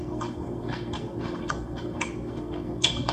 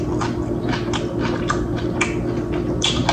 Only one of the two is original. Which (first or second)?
second